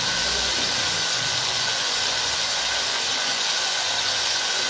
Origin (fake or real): fake